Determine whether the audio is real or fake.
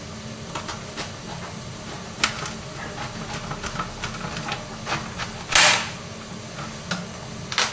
real